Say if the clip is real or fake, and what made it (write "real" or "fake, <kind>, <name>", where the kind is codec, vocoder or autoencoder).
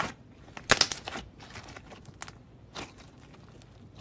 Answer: real